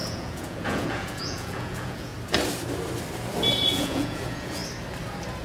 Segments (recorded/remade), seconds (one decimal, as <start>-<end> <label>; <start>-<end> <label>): 0.0-2.1 remade; 2.1-3.7 recorded; 3.7-4.6 remade; 4.6-5.4 recorded